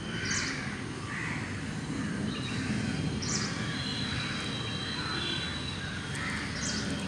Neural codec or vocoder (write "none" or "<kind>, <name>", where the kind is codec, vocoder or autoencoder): none